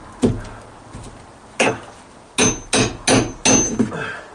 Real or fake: real